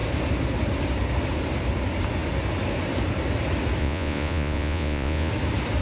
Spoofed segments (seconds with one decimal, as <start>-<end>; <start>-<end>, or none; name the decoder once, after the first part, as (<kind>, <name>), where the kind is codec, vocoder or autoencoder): 3.8-5.3 (vocoder, Vocos)